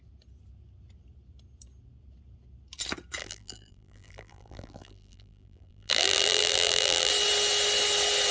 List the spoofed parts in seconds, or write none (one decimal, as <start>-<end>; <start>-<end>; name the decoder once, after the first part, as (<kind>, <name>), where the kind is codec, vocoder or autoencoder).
3.2-7.1 (vocoder, BigVGAN v2)